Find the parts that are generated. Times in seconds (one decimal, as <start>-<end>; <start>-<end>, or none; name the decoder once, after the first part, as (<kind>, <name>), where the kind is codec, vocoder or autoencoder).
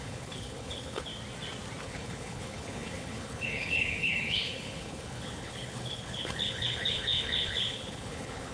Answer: 0.0-1.1 (codec, HILCodec); 1.8-8.5